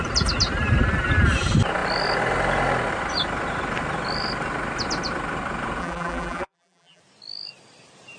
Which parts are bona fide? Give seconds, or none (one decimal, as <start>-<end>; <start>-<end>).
0.0-5.8; 7.0-8.2